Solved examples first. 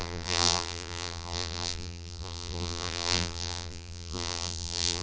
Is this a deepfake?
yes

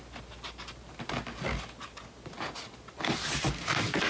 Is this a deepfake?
no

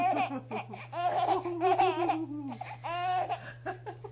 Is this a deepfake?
no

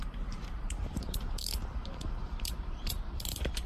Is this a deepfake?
yes